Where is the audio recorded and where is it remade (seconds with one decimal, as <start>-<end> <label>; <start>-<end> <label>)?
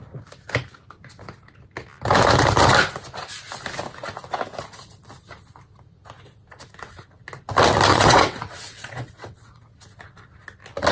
0.0-7.9 recorded; 7.9-9.7 remade; 9.7-10.9 recorded